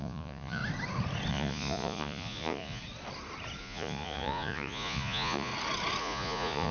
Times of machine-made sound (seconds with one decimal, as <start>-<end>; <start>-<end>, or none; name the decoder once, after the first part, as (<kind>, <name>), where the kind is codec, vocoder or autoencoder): 0.0-0.6 (vocoder, Vocos); 1.3-2.8; 3.6-5.5; 6.0-6.7